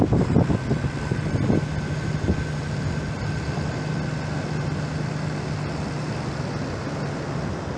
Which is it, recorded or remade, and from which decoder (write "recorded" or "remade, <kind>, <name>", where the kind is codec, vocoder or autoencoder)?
recorded